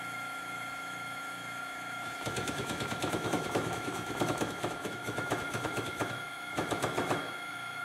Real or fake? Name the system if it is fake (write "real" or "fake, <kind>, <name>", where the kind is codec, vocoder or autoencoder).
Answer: fake, autoencoder, DAC-VAE